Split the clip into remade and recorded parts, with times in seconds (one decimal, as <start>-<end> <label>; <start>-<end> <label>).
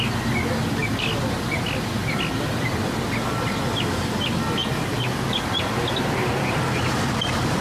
0.0-4.6 recorded; 4.6-5.5 remade; 5.5-6.3 recorded; 6.3-7.6 remade